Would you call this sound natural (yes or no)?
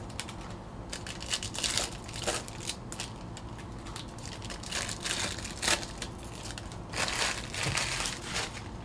yes